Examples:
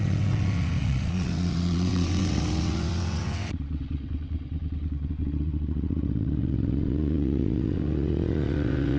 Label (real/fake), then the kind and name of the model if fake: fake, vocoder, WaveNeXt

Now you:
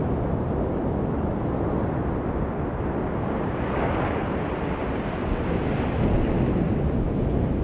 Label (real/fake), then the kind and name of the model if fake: real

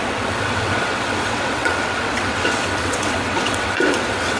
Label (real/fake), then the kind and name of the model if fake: fake, vocoder, WaveNeXt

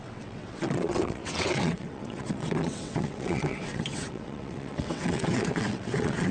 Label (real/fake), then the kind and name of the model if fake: fake, vocoder, WaveNeXt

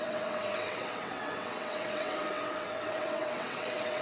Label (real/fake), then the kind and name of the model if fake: fake, vocoder, WaveNeXt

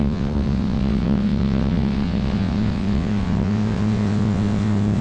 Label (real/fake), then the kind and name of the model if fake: fake, vocoder, WaveNeXt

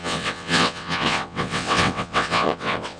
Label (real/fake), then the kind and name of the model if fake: fake, vocoder, WaveNeXt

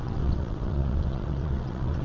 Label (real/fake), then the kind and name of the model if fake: fake, vocoder, WaveNeXt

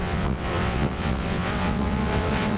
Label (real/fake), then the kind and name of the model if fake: fake, vocoder, WaveNeXt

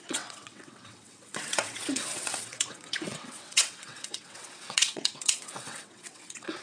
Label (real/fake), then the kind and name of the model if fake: fake, vocoder, WaveNeXt